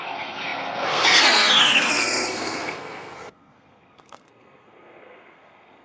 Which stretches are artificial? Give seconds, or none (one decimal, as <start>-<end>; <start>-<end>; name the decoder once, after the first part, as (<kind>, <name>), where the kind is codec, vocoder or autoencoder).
0.0-5.8 (codec, SNAC)